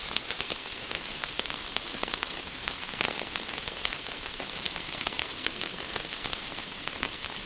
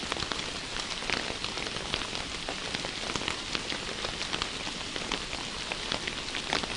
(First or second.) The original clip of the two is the second